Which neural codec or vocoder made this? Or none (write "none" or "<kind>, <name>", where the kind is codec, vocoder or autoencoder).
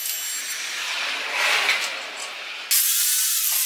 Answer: none